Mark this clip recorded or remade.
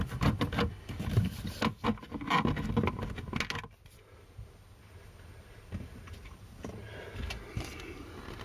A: recorded